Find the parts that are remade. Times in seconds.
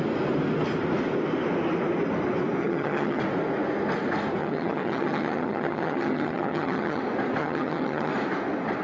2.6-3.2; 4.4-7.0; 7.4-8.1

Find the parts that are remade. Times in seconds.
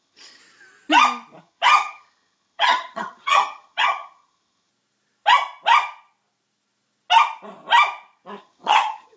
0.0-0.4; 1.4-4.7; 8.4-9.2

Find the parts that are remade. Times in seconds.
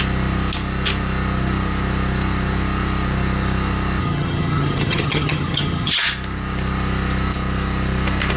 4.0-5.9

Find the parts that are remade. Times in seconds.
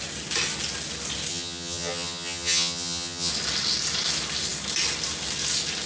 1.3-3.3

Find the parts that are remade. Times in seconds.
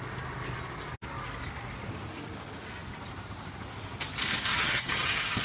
4.5-5.4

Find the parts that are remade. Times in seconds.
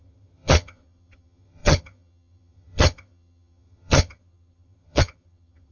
0.0-5.7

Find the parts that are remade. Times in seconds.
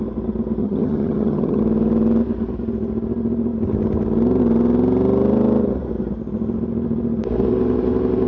0.6-1.6